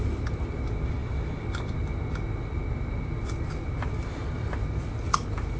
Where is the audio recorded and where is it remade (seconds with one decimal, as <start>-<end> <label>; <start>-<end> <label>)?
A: 0.0-5.6 recorded